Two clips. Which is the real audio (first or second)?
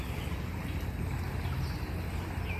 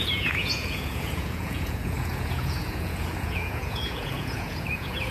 first